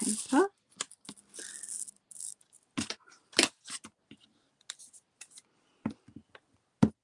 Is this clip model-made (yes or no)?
no